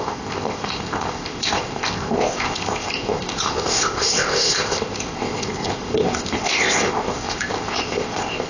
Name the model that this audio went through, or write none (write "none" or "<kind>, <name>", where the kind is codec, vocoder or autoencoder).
codec, ZipCodec